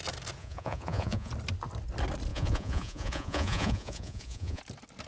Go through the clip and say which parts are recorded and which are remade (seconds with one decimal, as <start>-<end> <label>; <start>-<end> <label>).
0.0-0.4 recorded; 0.4-1.3 remade; 1.3-2.3 recorded; 2.3-4.6 remade; 4.6-5.1 recorded